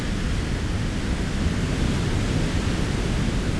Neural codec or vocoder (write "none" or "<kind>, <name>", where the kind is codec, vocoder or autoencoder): none